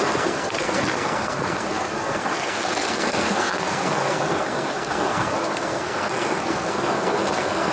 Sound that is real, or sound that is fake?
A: fake